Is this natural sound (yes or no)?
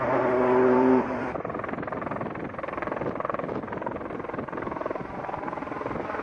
no